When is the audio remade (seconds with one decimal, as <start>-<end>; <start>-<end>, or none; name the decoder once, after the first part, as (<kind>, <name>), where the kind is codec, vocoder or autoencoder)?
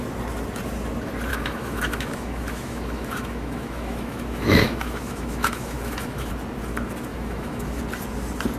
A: 1.3-6.3 (autoencoder, DAC-VAE); 7.1-7.8